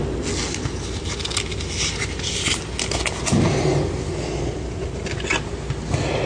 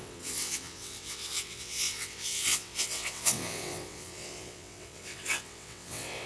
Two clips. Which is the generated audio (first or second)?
second